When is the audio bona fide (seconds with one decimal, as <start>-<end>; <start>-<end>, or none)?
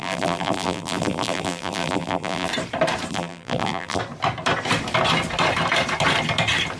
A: 2.5-3.1; 4.0-6.8